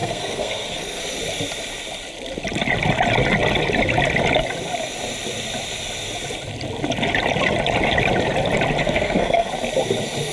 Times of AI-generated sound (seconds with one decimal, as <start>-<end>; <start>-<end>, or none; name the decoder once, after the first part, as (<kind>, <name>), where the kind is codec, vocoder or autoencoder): 0.0-1.0 (codec, SNAC); 8.8-9.5